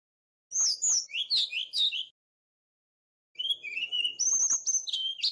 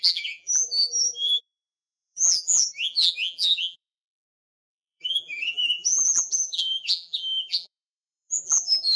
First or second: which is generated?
second